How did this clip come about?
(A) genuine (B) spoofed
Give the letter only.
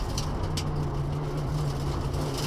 A